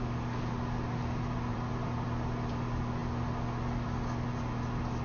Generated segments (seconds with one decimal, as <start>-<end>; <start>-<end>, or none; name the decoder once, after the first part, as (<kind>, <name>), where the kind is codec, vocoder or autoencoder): 1.5-2.5 (vocoder, BigVGAN v2)